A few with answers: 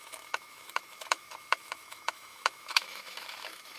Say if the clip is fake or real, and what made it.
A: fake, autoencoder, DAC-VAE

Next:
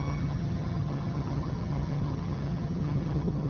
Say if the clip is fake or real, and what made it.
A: fake, vocoder, HiFi-GAN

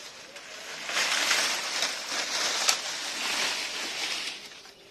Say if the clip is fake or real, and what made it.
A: real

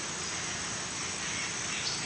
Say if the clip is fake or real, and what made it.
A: real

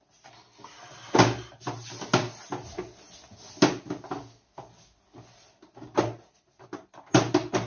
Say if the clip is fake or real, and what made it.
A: real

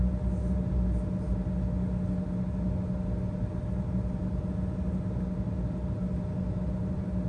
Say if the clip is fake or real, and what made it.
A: real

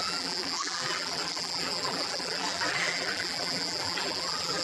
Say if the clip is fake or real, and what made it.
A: fake, vocoder, BigVGAN v2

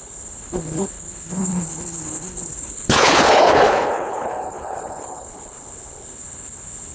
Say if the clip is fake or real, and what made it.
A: fake, codec, HILCodec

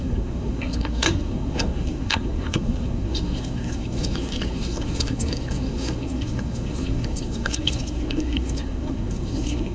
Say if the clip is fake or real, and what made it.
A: fake, codec, SNAC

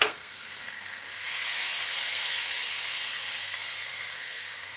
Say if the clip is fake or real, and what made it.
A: fake, codec, SNAC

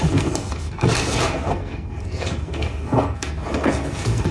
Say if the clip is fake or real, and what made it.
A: fake, codec, SNAC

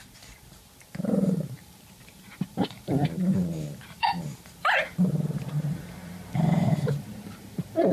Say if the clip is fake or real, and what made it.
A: fake, vocoder, BigVGAN v2